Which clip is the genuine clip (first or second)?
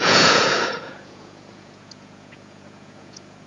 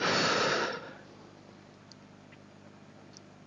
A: second